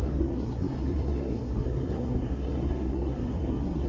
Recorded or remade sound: remade